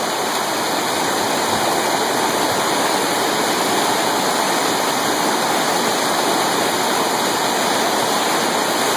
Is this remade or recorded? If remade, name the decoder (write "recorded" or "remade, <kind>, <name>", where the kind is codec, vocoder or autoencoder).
recorded